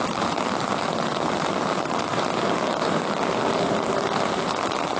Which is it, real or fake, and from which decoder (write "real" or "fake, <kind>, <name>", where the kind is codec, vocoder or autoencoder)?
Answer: real